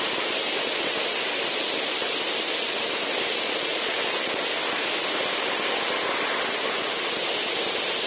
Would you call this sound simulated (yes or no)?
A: no